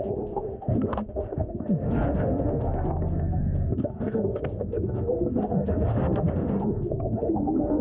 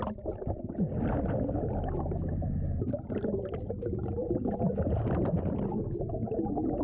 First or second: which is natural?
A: second